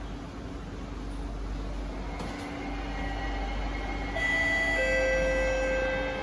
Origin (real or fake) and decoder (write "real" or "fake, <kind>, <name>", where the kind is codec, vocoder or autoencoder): real